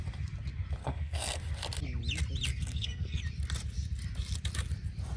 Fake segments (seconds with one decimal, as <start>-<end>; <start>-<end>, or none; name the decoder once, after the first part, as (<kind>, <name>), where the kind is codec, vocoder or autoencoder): 0.8-1.4 (codec, SNAC); 2.5-3.2